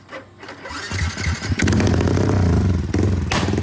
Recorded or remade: recorded